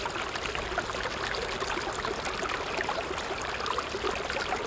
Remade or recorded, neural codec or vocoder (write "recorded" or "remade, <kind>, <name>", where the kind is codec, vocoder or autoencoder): recorded